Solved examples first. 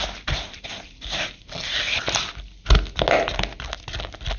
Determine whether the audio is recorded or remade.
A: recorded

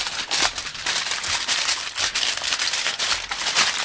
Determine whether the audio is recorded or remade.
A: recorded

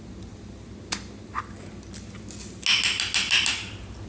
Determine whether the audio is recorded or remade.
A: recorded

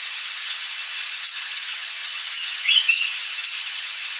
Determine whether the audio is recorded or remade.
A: remade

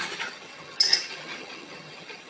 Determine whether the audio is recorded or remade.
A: remade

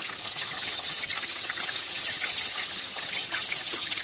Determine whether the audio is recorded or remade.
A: remade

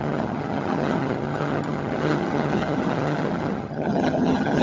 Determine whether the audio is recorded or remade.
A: remade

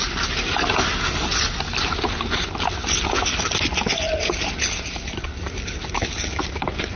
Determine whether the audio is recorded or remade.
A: recorded